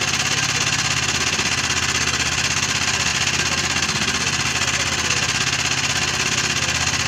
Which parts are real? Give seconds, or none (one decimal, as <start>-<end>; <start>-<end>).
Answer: 0.0-7.1